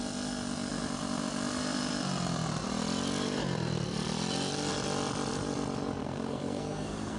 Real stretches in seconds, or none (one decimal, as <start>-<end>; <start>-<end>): 0.0-6.0